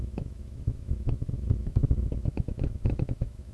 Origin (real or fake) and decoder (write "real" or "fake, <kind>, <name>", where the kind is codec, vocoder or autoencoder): fake, autoencoder, DAC-VAE